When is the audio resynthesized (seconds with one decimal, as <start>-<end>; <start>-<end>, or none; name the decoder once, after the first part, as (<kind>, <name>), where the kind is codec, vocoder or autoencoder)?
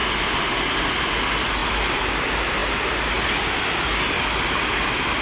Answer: none